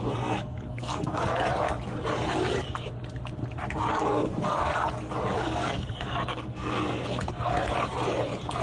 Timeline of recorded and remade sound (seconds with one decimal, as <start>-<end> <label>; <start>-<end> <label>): 0.0-1.4 remade; 1.4-3.9 recorded; 3.9-4.7 remade; 4.7-5.4 recorded; 5.4-7.5 remade; 7.5-8.6 recorded